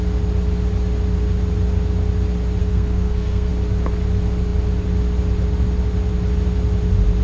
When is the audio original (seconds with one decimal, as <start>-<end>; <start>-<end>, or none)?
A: 0.0-2.6; 3.5-7.2